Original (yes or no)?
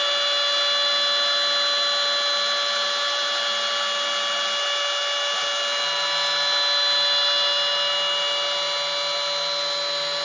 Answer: yes